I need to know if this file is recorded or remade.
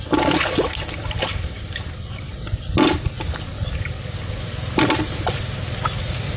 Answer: recorded